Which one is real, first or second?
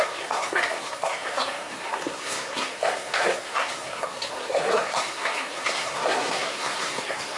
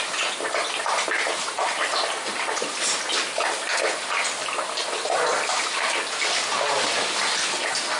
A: second